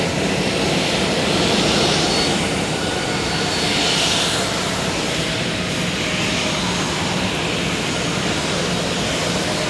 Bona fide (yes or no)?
yes